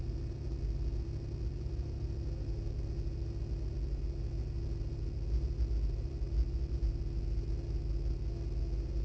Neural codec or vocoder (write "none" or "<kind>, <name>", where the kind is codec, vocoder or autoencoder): none